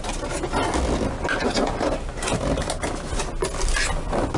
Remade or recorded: recorded